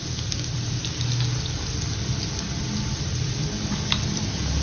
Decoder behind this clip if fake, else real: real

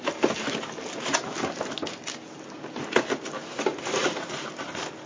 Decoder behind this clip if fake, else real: real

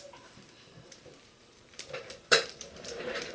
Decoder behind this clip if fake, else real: fake, vocoder, BigVGAN v2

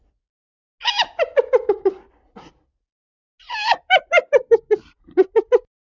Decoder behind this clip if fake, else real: real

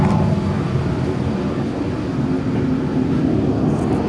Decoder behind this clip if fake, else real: real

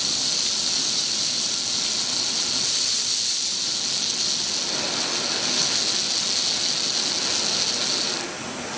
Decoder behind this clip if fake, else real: real